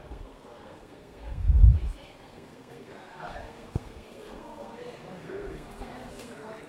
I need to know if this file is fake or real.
fake